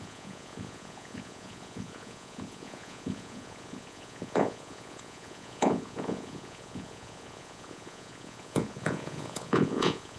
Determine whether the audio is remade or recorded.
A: remade